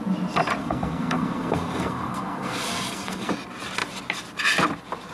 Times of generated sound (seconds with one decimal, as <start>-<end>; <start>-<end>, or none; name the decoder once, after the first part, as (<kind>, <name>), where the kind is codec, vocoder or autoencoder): 0.6-3.3 (codec, SNAC)